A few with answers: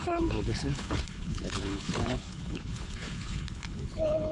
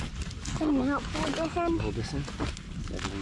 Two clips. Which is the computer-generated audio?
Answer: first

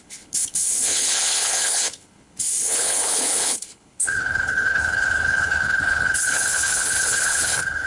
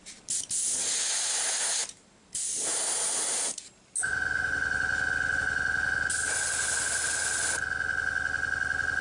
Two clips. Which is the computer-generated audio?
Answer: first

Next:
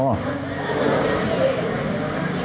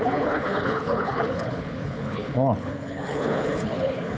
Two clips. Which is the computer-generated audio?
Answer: second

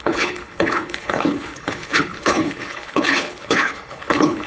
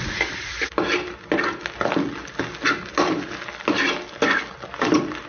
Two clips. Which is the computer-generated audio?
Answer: first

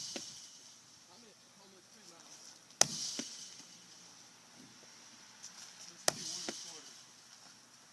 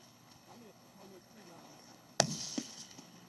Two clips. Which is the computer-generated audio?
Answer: second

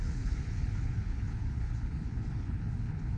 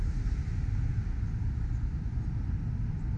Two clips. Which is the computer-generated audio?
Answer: first